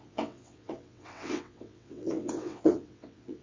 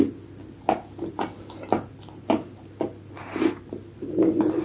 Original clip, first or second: second